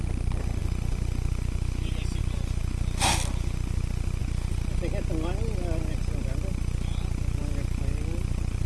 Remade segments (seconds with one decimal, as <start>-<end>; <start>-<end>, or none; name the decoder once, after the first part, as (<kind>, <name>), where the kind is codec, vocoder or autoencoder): none